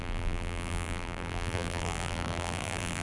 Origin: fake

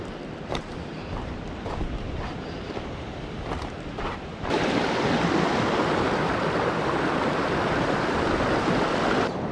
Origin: fake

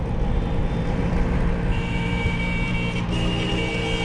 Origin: real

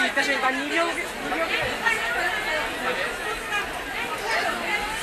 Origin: real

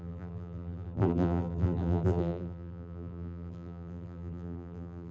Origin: fake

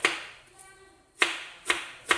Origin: fake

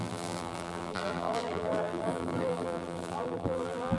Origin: fake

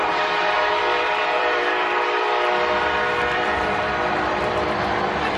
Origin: fake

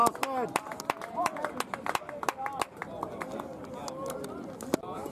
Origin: real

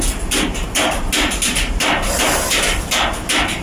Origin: real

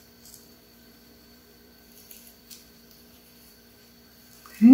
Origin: fake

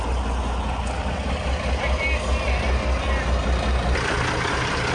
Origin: real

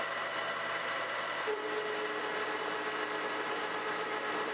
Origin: fake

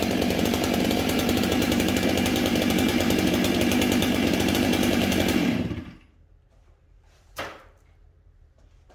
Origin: fake